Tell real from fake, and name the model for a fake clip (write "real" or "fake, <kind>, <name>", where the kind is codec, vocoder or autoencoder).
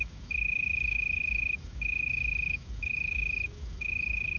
fake, autoencoder, DAC-VAE